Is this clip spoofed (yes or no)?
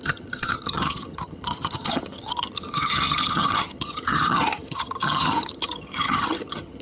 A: yes